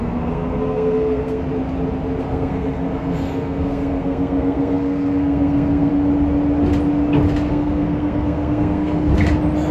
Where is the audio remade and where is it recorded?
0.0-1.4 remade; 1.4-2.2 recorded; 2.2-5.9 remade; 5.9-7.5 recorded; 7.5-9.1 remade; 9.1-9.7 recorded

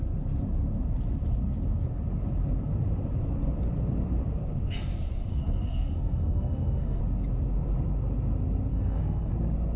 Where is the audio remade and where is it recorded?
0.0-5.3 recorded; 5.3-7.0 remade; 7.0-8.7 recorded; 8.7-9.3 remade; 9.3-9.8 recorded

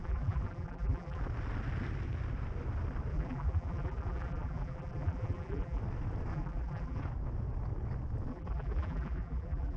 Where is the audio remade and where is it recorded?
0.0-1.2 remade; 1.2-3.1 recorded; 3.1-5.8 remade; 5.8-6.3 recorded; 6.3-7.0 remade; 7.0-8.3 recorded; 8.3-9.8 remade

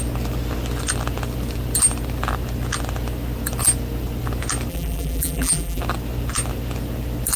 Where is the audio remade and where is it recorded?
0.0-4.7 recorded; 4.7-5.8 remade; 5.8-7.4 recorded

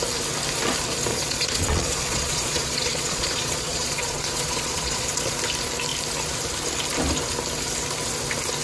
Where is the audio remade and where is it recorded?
0.0-1.1 recorded; 1.1-5.4 remade; 5.4-8.6 recorded

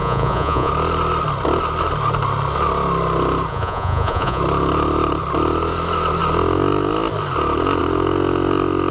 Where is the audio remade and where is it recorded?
0.0-0.7 remade; 0.7-3.5 recorded; 3.5-4.4 remade; 4.4-8.9 recorded

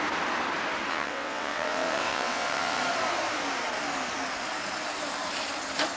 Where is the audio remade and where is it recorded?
0.0-0.9 recorded; 0.9-2.8 remade; 2.8-6.0 recorded

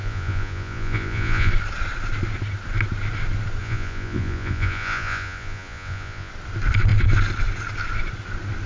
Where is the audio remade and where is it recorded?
0.0-1.5 remade; 1.5-3.6 recorded; 3.6-6.3 remade; 6.3-8.7 recorded